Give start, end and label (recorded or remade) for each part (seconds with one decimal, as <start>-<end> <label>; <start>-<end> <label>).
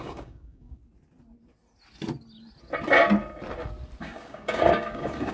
0.0-0.8 remade; 0.8-4.0 recorded; 4.0-5.3 remade